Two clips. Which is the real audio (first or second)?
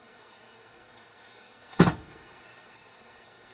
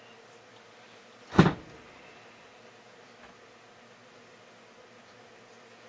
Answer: second